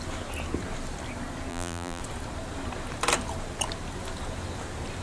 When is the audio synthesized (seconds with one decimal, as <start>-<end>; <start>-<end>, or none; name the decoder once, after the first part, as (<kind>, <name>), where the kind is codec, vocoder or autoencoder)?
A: 1.5-2.0 (vocoder, BigVGAN v2)